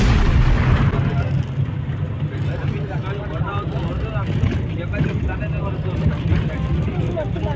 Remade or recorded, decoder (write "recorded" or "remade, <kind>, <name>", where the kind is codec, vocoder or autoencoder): recorded